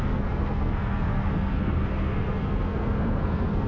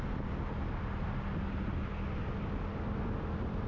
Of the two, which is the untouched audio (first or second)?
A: second